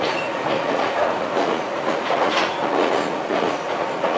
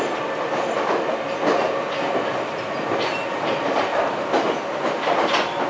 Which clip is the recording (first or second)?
second